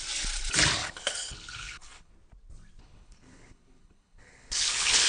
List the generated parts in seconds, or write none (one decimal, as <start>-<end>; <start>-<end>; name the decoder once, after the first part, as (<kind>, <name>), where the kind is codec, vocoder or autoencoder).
0.8-2.1 (codec, HILCodec); 2.8-5.1